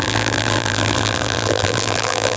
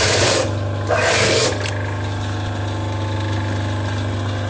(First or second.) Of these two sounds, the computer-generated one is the first